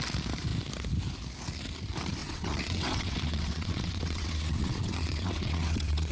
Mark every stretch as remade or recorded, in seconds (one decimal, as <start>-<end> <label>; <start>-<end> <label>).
0.0-2.2 recorded; 2.2-6.1 remade